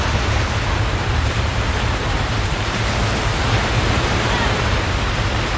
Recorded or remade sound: remade